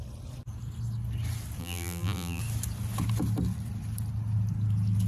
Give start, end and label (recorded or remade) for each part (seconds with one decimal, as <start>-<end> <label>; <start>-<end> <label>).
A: 0.0-1.6 recorded; 1.6-2.4 remade; 2.4-5.1 recorded